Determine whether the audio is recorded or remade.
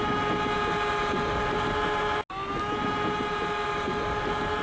recorded